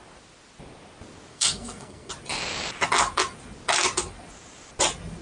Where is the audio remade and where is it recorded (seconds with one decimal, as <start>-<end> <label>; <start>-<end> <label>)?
0.0-1.3 recorded; 1.3-2.1 remade; 2.1-5.2 recorded